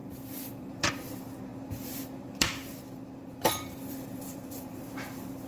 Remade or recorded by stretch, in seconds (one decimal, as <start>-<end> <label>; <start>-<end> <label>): 0.0-5.5 remade